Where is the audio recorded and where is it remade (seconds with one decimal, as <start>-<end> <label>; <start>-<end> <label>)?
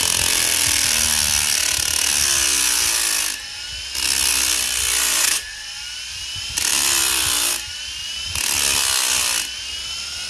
0.0-4.3 recorded; 4.3-7.8 remade; 7.8-10.3 recorded